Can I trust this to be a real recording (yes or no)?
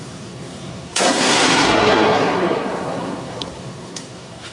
no